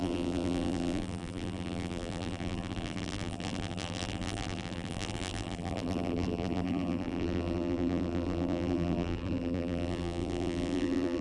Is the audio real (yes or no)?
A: no